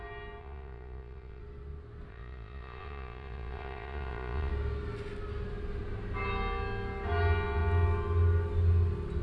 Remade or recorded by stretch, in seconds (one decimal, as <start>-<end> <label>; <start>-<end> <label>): 0.0-0.4 recorded; 0.4-1.4 remade; 1.4-2.1 recorded; 2.1-4.5 remade; 4.5-9.2 recorded